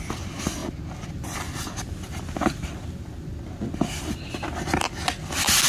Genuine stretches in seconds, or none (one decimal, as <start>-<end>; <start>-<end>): 0.0-5.7